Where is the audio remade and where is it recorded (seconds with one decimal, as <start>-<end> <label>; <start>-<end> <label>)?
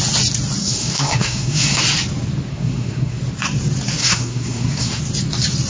0.0-0.6 recorded; 0.6-1.8 remade; 1.8-2.5 recorded; 2.5-3.2 remade; 3.2-4.0 recorded; 4.0-5.0 remade; 5.0-5.7 recorded